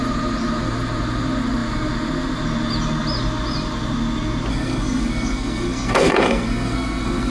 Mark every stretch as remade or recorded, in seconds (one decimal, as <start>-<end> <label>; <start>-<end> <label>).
0.0-4.5 recorded; 4.5-7.3 remade